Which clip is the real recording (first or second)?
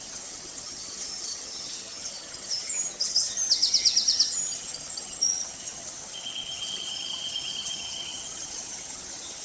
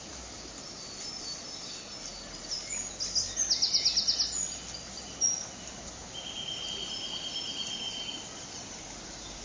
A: second